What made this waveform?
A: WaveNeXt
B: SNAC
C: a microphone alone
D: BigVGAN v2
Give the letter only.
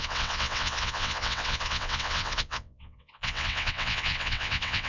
A